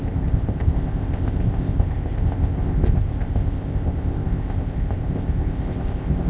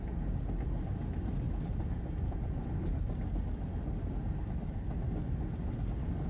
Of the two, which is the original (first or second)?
second